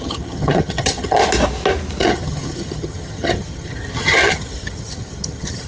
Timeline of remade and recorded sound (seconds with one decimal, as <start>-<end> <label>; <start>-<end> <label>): 0.0-1.2 remade; 1.2-2.0 recorded; 2.0-5.7 remade

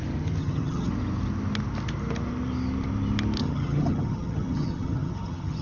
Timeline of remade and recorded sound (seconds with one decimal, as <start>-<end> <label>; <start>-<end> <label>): 0.0-0.4 recorded; 0.4-0.9 remade; 0.9-3.4 recorded; 3.4-5.6 remade

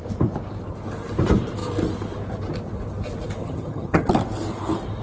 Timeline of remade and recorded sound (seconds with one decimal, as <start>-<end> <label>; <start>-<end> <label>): 0.0-3.4 recorded; 3.4-4.1 remade; 4.1-5.0 recorded

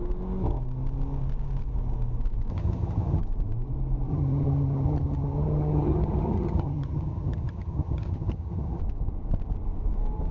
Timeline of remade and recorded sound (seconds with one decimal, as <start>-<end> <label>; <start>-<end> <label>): 0.0-2.5 recorded; 2.5-3.2 remade; 3.2-4.1 recorded; 4.1-8.8 remade; 8.8-10.3 recorded

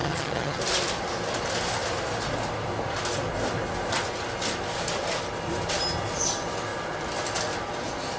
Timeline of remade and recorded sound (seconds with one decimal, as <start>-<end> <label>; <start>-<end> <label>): 0.0-0.6 remade; 0.6-8.2 recorded

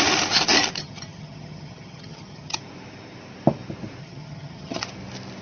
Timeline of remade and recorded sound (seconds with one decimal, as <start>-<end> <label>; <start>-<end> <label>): 0.0-0.8 recorded; 0.8-2.6 remade; 2.6-4.0 recorded; 4.0-4.8 remade; 4.8-5.4 recorded

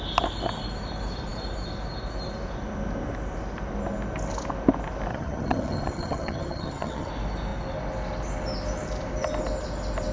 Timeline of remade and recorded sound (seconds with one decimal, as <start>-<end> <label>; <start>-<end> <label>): 0.0-5.1 recorded; 5.1-7.1 remade; 7.1-10.1 recorded

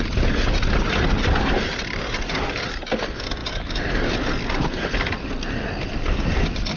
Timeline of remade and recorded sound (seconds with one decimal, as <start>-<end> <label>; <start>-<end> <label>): 0.0-6.8 recorded